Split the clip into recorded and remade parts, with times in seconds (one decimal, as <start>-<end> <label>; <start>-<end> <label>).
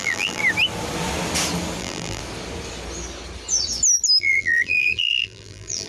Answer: 0.0-0.4 remade; 0.4-1.8 recorded; 1.8-2.2 remade; 2.2-4.2 recorded; 4.2-5.9 remade